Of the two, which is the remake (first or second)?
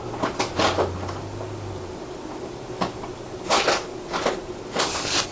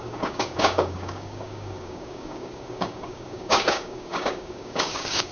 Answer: second